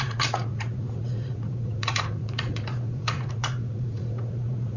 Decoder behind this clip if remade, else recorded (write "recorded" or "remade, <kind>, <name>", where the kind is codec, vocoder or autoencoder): remade, vocoder, Vocos